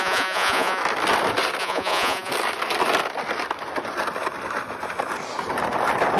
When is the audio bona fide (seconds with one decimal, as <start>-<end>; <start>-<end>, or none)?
0.8-1.6; 2.3-6.2